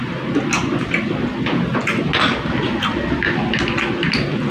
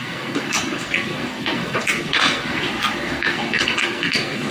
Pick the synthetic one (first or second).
second